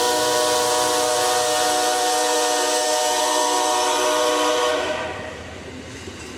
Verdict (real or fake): fake